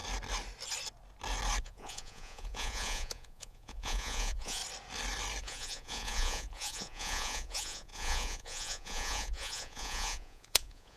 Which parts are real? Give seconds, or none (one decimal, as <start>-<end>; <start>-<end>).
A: 0.0-1.6; 4.6-5.4